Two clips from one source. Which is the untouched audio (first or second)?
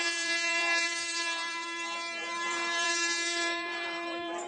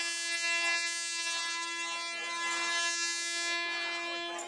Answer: second